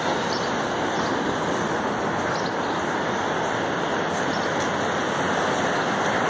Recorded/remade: recorded